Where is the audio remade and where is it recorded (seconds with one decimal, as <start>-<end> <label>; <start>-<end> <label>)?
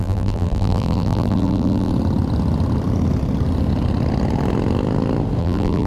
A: 0.0-1.9 remade; 1.9-5.4 recorded; 5.4-5.9 remade